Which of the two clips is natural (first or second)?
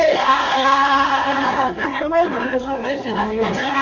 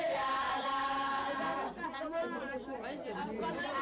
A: second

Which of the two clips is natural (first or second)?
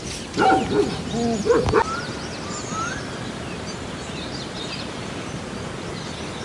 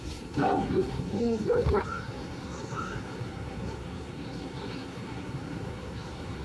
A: first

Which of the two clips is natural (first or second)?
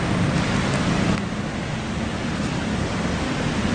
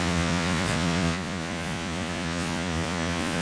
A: first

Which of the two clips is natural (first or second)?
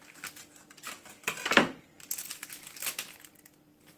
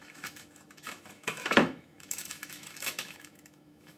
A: first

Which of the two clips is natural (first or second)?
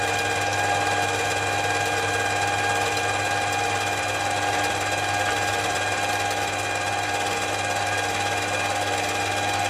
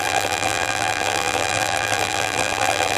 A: first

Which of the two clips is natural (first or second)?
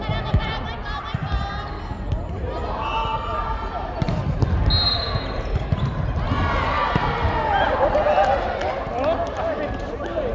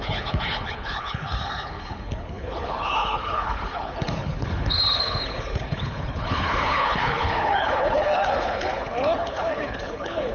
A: first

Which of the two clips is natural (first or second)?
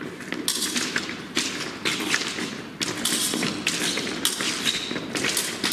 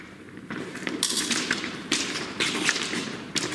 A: first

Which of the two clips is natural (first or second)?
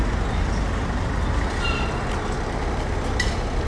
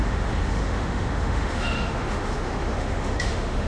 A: first